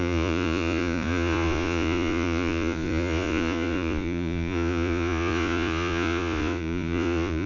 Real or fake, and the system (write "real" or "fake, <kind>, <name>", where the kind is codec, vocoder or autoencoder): fake, vocoder, Vocos